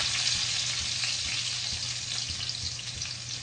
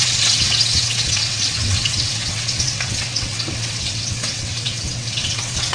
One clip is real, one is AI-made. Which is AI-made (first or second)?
second